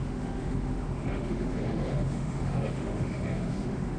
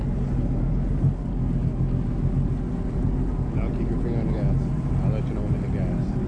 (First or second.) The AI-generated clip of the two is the first